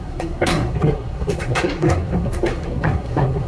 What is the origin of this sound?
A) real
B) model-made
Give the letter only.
B